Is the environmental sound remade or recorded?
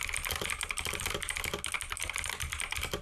recorded